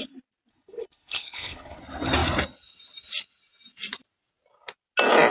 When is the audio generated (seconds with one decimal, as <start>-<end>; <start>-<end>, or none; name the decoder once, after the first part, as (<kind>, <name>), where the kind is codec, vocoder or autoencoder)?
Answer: 0.5-1.8 (codec, HILCodec)